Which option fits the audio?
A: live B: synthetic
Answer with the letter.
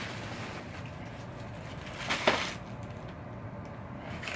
A